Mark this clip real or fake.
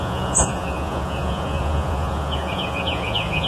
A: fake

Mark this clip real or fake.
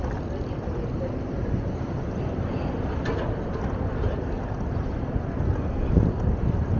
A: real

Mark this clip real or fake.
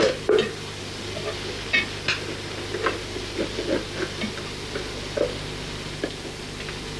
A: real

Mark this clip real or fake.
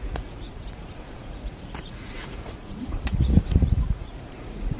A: fake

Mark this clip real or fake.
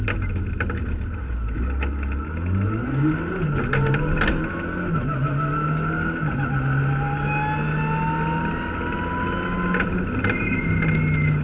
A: real